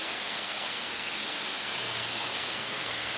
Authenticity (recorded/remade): remade